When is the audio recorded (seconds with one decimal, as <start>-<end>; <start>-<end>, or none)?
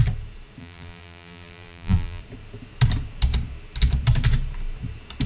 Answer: 0.0-0.6; 2.2-5.3